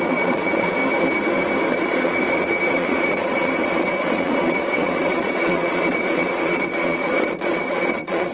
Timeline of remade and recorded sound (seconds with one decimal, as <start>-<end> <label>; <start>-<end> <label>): 0.0-0.8 remade; 0.8-1.7 recorded; 1.7-8.3 remade

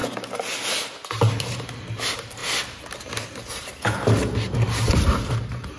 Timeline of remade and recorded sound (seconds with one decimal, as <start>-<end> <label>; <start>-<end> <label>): 0.0-5.8 recorded